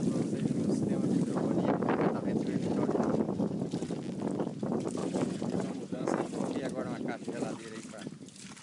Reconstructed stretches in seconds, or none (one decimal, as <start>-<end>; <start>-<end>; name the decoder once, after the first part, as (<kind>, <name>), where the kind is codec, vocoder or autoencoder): 5.0-6.5 (vocoder, Vocos)

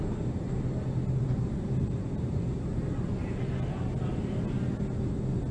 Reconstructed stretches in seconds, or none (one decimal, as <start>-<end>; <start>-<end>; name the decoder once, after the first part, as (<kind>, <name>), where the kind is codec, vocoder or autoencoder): 1.2-2.8 (vocoder, BigVGAN v2)

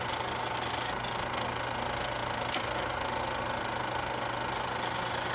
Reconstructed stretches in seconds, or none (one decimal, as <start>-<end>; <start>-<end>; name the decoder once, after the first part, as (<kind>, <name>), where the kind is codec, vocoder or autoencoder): none

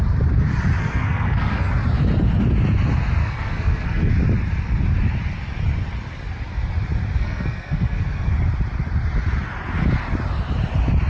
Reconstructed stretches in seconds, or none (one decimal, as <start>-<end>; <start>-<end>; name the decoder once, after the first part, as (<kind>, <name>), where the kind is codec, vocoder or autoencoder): 0.8-1.7 (codec, SNAC); 3.2-4.1; 7.2-8.3

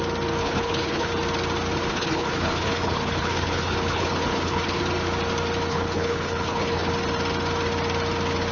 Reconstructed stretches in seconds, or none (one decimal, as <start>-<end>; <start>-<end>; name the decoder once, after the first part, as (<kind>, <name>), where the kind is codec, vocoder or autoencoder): 0.4-1.1 (codec, HILCodec); 1.9-4.8; 5.7-6.9

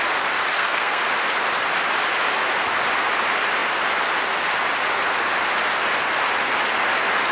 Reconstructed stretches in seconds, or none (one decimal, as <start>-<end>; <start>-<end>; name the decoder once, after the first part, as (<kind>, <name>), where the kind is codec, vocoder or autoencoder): 0.5-1.0 (codec, SNAC)

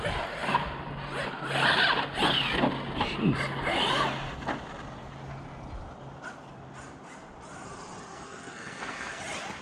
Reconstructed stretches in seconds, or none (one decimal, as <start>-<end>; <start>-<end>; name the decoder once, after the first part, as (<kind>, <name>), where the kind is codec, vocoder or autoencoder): 8.1-9.2 (codec, SNAC)